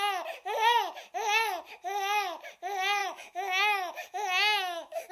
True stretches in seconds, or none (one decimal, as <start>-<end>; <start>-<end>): 0.0-3.0

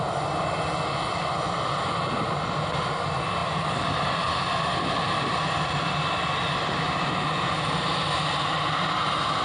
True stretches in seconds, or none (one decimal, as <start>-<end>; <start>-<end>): 0.0-9.4

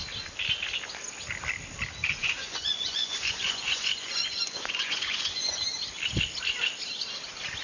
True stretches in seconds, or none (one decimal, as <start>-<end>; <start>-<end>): 0.0-2.0; 5.6-7.6

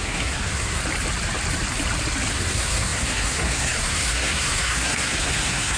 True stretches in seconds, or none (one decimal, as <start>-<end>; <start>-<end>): 0.8-2.3